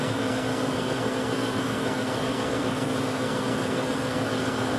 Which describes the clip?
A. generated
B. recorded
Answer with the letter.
A